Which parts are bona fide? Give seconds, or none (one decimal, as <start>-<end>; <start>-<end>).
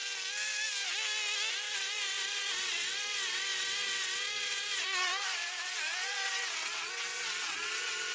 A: 0.0-1.5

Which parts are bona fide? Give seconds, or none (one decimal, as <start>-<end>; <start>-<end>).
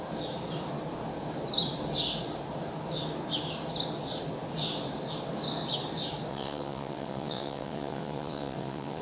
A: 0.0-6.3